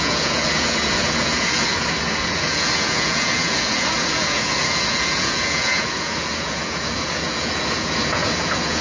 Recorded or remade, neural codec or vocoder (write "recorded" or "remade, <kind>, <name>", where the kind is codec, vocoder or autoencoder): remade, vocoder, Vocos